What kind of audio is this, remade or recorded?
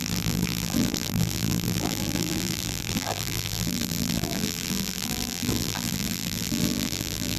remade